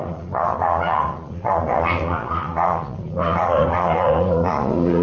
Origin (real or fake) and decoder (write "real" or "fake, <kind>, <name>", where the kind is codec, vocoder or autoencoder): fake, vocoder, Vocos